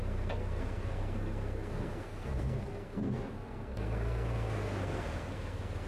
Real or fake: fake